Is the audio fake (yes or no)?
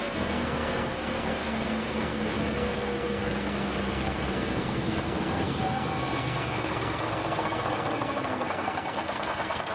yes